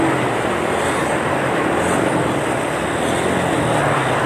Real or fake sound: real